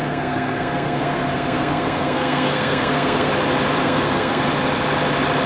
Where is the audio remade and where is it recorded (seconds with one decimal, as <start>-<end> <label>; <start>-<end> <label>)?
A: 0.0-3.3 remade; 3.3-3.8 recorded; 3.8-4.4 remade; 4.4-5.5 recorded